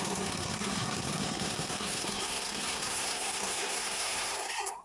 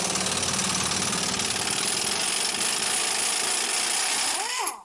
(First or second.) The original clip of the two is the second